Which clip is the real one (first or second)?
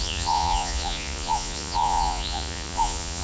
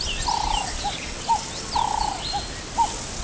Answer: second